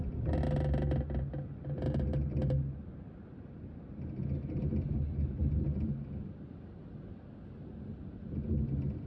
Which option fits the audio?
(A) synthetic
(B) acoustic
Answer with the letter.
B